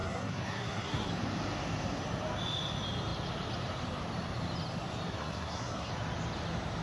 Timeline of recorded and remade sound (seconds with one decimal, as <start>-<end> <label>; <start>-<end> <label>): 0.0-1.1 remade; 1.1-5.2 recorded; 5.2-5.9 remade; 5.9-6.8 recorded